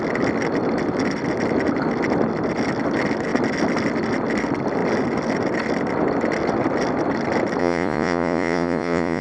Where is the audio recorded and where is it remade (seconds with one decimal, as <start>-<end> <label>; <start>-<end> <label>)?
0.0-7.6 recorded; 7.6-9.2 remade